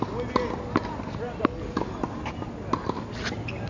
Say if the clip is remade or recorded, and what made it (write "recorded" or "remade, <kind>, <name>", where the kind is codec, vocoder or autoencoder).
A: recorded